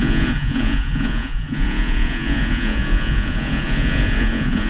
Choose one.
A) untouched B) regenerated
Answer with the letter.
B